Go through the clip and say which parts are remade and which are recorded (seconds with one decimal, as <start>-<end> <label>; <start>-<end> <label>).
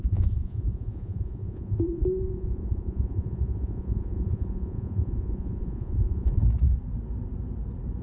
0.0-6.4 remade; 6.4-8.0 recorded